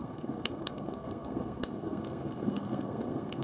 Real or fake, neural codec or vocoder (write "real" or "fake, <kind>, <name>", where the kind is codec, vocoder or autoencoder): fake, codec, SNAC